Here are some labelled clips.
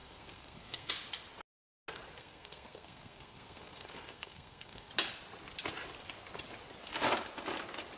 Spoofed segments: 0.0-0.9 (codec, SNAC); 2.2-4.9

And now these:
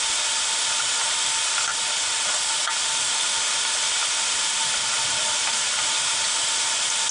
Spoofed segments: none

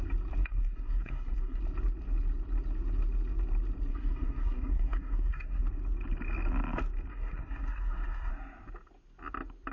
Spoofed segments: 0.4-1.6 (codec, SNAC); 3.9-5.6; 7.1-8.3

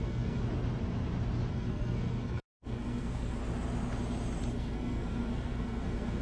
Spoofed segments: 0.0-0.4 (codec, SNAC); 1.5-3.4; 4.5-6.2

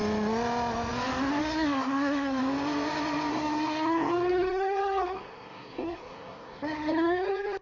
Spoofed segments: 1.4-2.4 (codec, SNAC); 3.3-7.6

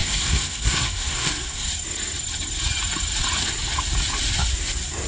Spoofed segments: 0.0-1.7 (codec, SNAC)

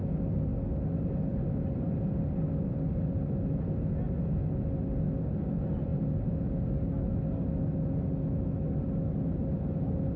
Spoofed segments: none

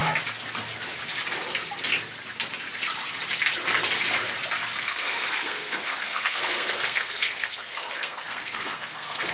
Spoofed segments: 4.8-9.3 (codec, SNAC)